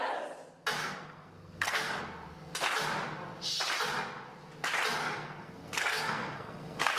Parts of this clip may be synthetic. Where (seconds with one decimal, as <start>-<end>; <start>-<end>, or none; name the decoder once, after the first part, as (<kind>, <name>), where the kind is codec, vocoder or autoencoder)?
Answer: 0.8-2.0 (codec, SNAC); 5.0-7.0

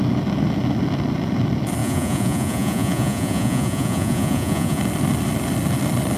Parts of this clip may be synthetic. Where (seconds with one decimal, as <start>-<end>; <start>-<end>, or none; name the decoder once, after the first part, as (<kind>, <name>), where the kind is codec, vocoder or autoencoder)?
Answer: 1.8-4.8 (vocoder, Vocos)

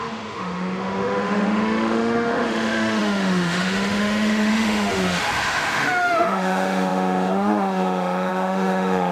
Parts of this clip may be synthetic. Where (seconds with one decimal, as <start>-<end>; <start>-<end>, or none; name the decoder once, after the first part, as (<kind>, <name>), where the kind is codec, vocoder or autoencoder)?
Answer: 0.0-9.1 (autoencoder, DAC-VAE)

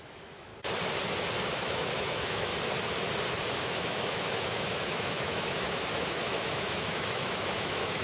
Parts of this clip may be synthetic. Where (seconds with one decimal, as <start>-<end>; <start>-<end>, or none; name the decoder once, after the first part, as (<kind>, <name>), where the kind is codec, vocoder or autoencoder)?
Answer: 0.0-0.5 (autoencoder, DAC-VAE); 1.6-2.5; 3.5-8.0